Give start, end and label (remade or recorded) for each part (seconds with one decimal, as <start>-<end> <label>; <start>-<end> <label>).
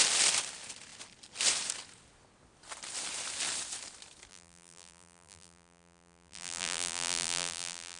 0.0-4.3 recorded; 4.3-8.0 remade